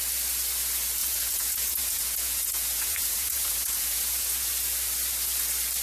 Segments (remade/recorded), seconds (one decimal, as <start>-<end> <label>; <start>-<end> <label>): 0.0-1.0 recorded; 1.0-4.5 remade; 4.5-5.8 recorded